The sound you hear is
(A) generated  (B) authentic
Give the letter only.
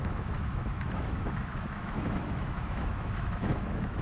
A